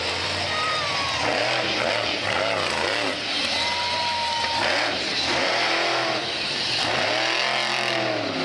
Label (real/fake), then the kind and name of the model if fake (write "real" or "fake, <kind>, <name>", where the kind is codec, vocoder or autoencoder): real